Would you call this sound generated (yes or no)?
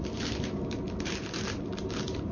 yes